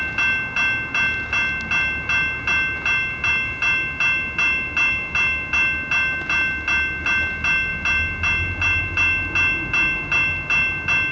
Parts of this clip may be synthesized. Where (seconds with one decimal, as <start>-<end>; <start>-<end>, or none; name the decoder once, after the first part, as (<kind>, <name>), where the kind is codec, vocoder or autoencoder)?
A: none